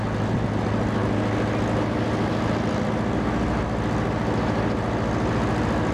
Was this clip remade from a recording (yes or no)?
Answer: no